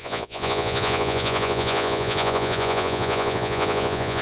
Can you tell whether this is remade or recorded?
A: remade